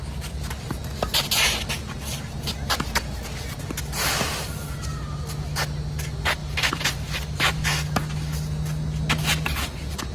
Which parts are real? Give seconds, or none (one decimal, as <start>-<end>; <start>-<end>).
0.0-6.4; 7.7-10.1